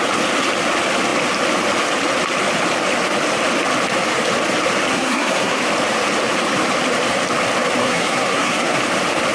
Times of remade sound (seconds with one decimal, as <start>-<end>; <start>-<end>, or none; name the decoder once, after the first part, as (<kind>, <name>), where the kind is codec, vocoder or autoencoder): 4.9-5.6 (codec, SNAC); 7.8-8.8